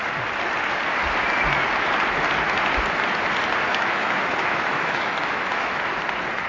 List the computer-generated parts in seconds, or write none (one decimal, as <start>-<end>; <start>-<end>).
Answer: 3.7-5.8